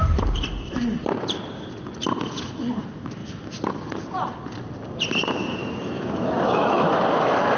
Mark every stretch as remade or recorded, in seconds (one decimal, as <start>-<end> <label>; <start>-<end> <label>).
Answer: 0.0-5.6 recorded; 5.6-6.9 remade; 6.9-7.6 recorded